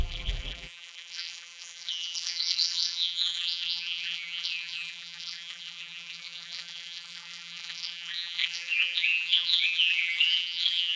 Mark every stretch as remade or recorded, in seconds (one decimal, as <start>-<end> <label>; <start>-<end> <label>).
0.0-11.0 remade